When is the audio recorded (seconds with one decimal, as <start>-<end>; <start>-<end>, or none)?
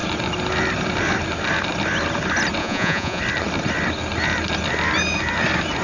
0.0-2.6; 3.2-5.8